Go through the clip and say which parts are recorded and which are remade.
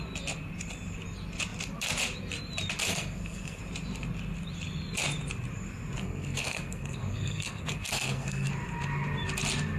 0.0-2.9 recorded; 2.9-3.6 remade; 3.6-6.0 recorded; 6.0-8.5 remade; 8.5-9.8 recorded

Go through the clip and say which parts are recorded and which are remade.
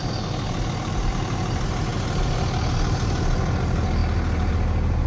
0.0-5.1 recorded